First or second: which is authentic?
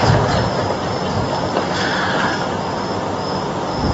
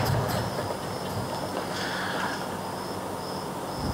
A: second